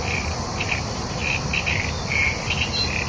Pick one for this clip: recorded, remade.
recorded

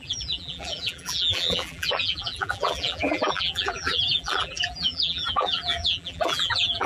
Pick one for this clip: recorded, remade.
remade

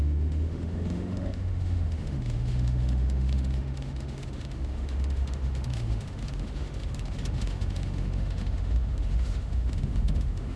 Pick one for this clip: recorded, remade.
remade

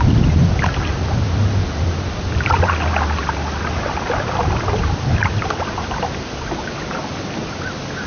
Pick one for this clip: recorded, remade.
recorded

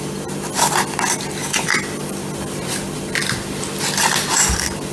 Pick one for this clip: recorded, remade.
recorded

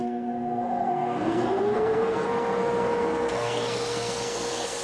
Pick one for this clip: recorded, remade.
remade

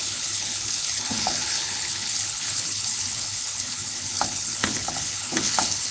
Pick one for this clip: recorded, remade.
remade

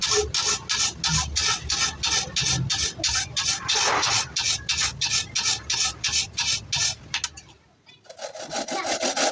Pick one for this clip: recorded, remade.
recorded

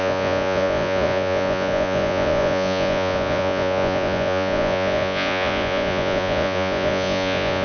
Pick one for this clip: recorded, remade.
remade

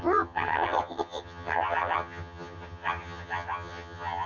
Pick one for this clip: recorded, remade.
remade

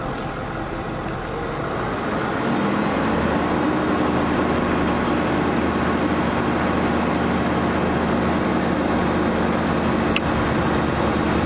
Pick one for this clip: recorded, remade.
recorded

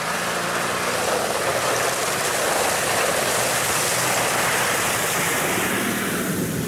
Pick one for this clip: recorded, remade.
recorded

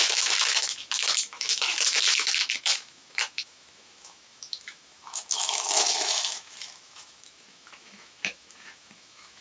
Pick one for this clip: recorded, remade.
remade